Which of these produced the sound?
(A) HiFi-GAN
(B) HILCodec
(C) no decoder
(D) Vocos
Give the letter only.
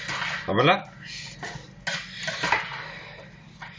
C